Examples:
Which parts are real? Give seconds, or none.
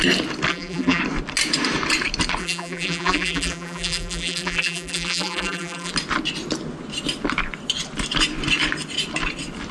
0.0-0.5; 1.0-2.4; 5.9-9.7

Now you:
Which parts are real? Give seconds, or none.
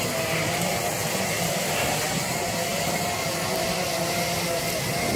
0.0-1.0; 1.5-5.2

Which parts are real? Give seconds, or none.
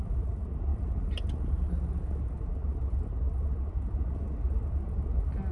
0.0-5.5